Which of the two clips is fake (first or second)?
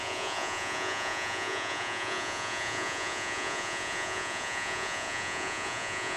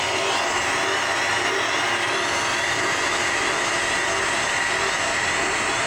first